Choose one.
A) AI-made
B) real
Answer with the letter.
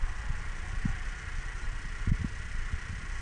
B